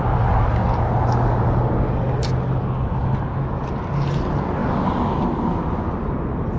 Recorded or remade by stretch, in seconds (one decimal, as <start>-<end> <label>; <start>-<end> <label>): 0.0-6.6 recorded